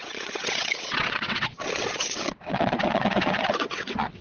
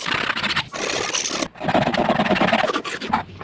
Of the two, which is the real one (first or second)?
second